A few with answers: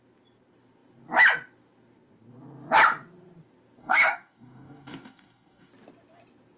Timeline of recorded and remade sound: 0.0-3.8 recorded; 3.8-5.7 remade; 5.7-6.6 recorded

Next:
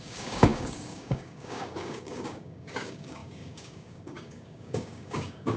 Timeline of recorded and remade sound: 0.0-5.6 remade

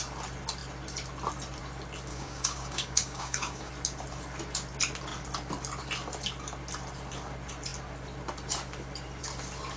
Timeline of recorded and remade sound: 0.0-2.1 recorded; 2.1-3.7 remade; 3.7-9.8 recorded

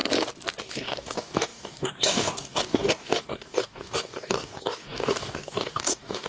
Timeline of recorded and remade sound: 0.0-0.6 recorded; 0.6-6.3 remade

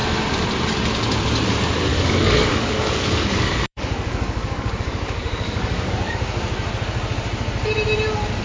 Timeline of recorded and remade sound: 0.0-1.9 recorded; 1.9-6.1 remade; 6.1-8.4 recorded

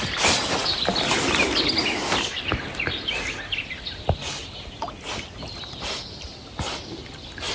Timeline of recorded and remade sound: 0.0-7.5 recorded